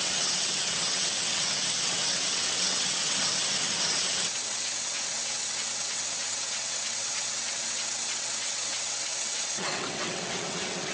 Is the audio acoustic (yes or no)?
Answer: no